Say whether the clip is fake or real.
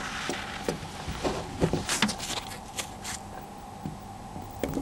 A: real